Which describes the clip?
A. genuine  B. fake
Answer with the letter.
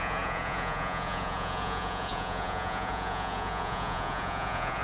B